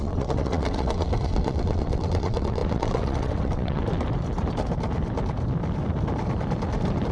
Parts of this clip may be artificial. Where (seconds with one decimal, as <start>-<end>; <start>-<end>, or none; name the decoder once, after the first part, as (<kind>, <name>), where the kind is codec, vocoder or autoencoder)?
0.0-3.8 (vocoder, WaveNeXt)